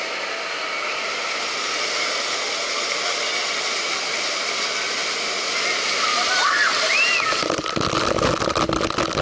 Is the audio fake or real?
real